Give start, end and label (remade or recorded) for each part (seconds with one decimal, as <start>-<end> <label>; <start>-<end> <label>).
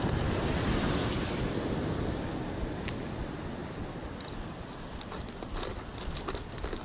0.0-6.8 recorded